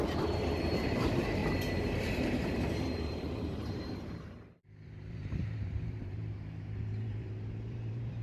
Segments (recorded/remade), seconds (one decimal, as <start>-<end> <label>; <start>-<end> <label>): 0.0-1.4 remade; 1.4-2.1 recorded; 2.1-8.2 remade